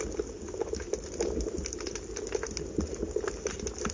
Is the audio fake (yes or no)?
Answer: no